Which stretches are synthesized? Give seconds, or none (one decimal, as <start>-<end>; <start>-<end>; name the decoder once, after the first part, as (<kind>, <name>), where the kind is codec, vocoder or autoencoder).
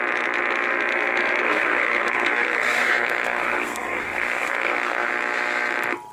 1.4-5.1 (codec, SNAC)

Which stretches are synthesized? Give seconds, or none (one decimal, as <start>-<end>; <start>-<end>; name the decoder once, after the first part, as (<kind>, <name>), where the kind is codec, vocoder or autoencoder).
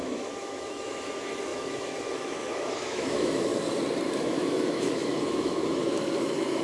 0.0-3.5 (autoencoder, DAC-VAE); 4.2-6.6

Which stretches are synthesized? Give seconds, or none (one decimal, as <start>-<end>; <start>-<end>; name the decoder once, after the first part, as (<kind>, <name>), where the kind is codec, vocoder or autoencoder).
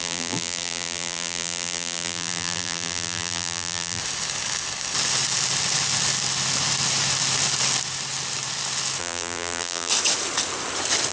0.0-4.0 (vocoder, BigVGAN v2); 9.0-9.9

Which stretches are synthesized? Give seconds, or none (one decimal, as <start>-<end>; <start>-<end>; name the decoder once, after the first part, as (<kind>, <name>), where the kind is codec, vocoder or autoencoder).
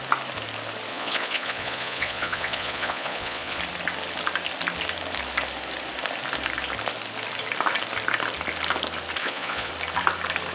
0.9-3.6 (vocoder, Vocos); 9.2-9.7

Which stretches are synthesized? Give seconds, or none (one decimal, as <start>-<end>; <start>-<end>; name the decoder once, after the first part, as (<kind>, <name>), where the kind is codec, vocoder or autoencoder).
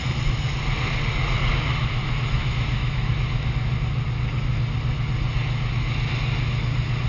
2.0-3.1 (autoencoder, DAC-VAE)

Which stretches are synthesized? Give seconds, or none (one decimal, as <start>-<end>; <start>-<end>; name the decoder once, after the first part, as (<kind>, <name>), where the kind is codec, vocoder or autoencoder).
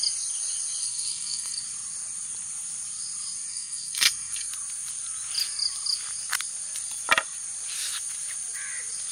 0.8-1.6 (codec, SNAC); 3.5-4.5